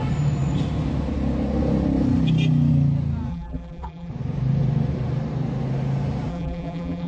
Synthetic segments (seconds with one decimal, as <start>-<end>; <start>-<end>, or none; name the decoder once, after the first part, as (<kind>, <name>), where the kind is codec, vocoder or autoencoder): 3.3-4.1 (vocoder, BigVGAN v2); 6.3-7.1